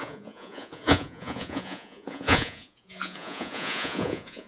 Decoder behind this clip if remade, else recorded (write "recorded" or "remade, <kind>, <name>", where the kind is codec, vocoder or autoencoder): remade, vocoder, Vocos